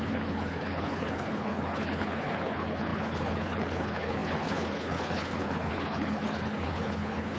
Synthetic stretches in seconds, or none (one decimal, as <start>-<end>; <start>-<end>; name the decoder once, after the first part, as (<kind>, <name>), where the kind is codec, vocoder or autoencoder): 0.0-7.4 (codec, HILCodec)